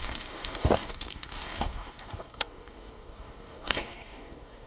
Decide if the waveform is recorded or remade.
remade